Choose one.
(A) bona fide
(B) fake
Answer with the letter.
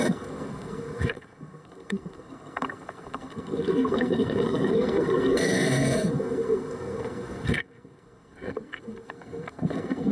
B